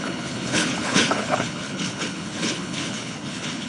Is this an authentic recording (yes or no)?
no